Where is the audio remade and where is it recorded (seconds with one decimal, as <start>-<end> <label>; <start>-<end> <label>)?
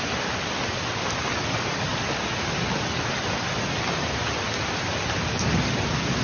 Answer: 0.0-6.2 recorded